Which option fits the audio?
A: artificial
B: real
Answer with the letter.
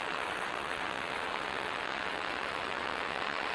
A